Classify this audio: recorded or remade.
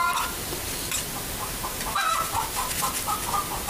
recorded